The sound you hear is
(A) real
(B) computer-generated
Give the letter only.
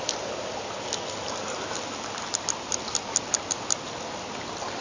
A